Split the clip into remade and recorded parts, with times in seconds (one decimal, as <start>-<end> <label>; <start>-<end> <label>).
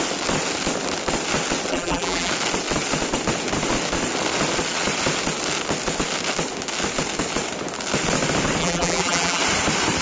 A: 0.0-1.7 recorded; 1.7-2.3 remade; 2.3-8.6 recorded; 8.6-9.4 remade; 9.4-10.0 recorded